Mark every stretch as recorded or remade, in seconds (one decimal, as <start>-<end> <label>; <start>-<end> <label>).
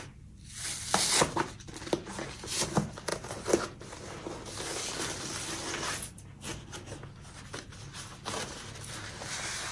0.0-9.7 recorded